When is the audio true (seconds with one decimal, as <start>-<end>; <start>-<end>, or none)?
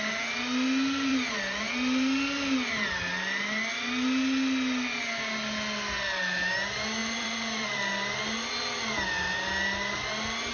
0.0-7.0; 7.9-10.5